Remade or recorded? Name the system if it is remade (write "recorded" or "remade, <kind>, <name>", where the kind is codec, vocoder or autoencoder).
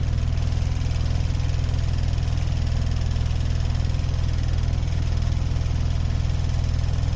recorded